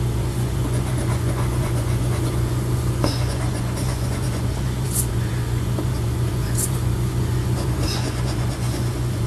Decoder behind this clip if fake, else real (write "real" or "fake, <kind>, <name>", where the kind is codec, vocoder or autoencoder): fake, vocoder, Vocos